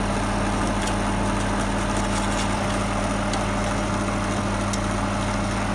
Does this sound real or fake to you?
real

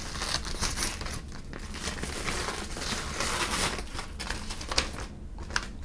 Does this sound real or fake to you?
real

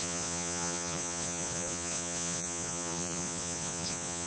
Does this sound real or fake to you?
fake